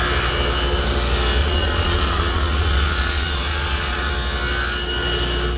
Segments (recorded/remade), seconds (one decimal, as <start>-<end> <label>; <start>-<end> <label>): 0.0-1.4 recorded; 1.4-4.1 remade; 4.1-5.6 recorded